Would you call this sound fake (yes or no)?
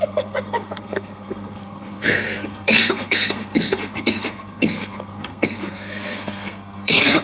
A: yes